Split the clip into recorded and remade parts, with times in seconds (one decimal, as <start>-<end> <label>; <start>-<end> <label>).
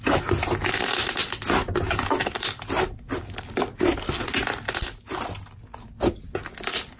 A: 0.0-7.0 recorded